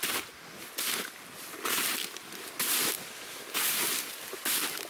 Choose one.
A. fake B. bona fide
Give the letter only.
A